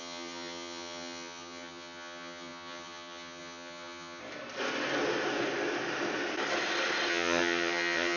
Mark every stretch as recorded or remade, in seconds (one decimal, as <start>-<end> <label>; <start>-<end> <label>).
0.0-4.2 remade; 4.2-7.1 recorded; 7.1-8.2 remade